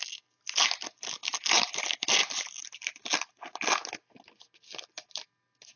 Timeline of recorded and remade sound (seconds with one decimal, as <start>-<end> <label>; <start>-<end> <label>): 0.0-1.3 recorded; 1.3-1.8 remade; 1.8-5.8 recorded